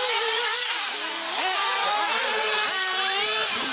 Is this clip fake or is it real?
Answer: fake